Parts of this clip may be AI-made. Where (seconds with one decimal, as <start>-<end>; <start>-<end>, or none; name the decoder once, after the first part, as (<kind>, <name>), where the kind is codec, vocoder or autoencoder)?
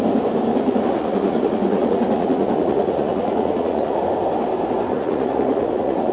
0.5-4.0 (vocoder, Vocos); 4.9-6.1